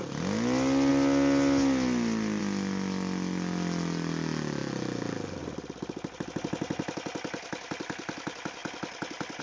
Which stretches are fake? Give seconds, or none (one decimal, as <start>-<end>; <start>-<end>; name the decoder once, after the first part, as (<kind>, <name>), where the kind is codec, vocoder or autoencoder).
none